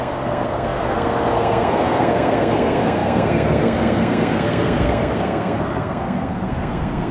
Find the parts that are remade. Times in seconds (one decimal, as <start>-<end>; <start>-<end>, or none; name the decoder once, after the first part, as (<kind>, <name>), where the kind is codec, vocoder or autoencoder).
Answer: 0.0-7.1 (codec, SNAC)